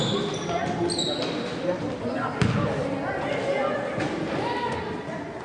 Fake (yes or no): no